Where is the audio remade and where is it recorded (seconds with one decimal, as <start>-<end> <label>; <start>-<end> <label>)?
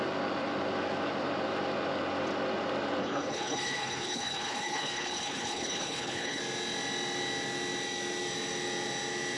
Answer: 0.0-3.0 recorded; 3.0-6.4 remade; 6.4-9.4 recorded